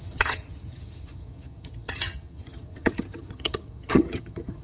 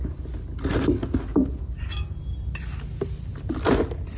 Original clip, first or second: second